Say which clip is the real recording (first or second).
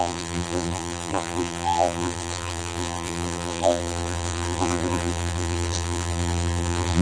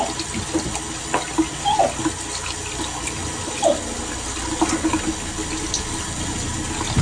second